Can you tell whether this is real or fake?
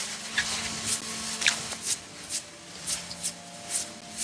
real